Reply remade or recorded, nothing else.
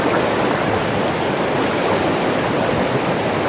recorded